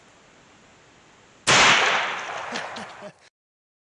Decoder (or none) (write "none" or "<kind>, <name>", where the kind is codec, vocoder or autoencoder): none